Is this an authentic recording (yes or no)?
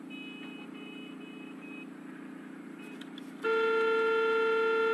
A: yes